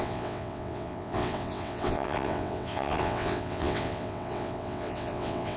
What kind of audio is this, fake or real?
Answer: fake